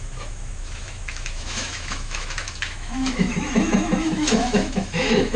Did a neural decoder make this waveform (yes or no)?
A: yes